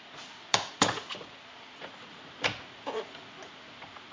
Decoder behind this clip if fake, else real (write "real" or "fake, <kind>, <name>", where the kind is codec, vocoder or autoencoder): fake, vocoder, Vocos